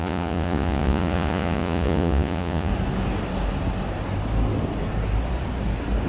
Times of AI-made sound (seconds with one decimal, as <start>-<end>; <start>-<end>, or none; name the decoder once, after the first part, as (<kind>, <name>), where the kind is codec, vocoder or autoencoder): 0.0-2.7 (vocoder, Vocos)